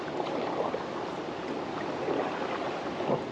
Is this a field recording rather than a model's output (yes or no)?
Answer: yes